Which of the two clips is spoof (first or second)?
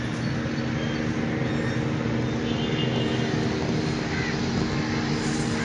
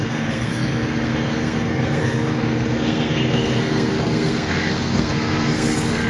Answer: second